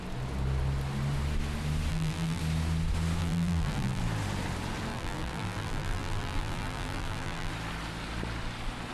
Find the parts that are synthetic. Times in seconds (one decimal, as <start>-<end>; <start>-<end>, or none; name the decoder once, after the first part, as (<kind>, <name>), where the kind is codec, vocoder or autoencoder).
1.9-2.4 (vocoder, BigVGAN v2); 3.2-4.0; 4.9-7.5